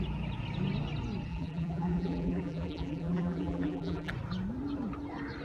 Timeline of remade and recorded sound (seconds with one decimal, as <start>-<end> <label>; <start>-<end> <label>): 0.0-1.3 recorded; 1.3-4.1 remade; 4.1-5.4 recorded